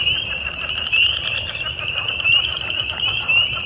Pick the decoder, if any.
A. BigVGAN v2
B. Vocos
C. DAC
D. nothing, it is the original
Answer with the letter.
A